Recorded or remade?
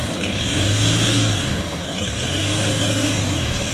remade